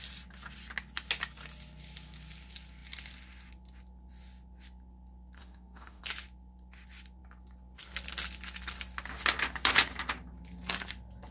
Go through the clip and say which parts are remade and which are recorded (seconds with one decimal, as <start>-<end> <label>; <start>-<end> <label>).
0.0-5.4 recorded; 5.4-6.0 remade; 6.0-11.3 recorded